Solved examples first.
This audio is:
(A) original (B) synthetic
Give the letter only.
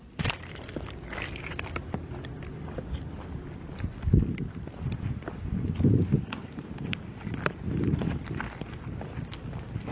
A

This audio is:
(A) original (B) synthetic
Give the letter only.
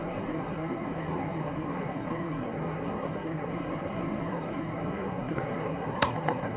B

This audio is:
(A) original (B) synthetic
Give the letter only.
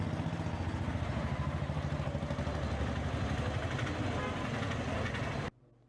A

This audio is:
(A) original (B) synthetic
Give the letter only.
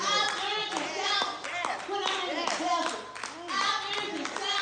A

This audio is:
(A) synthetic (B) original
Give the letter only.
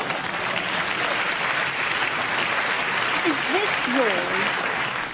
B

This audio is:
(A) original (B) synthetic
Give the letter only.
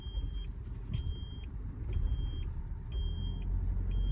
A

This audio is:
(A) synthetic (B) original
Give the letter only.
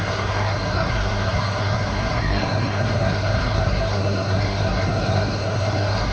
A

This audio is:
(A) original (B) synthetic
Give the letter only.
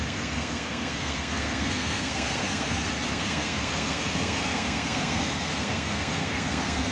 B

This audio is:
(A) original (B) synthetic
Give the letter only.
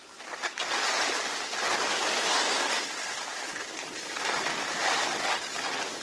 A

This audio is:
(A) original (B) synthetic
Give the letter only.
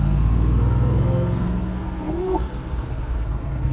B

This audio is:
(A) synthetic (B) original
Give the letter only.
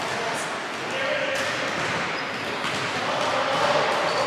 B